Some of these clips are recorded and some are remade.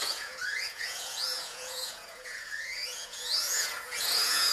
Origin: remade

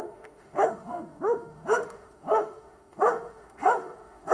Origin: remade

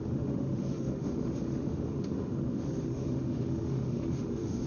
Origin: remade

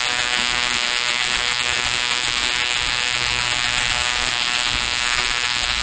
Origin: remade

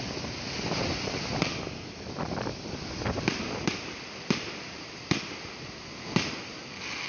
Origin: recorded